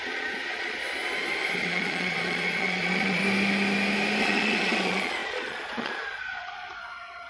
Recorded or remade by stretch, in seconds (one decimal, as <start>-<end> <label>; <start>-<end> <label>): 0.0-0.8 remade; 0.8-1.6 recorded; 1.6-3.2 remade; 3.2-4.2 recorded; 4.2-7.3 remade